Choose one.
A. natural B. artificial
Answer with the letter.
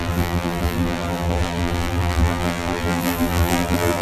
B